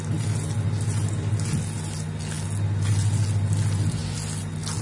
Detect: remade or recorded recorded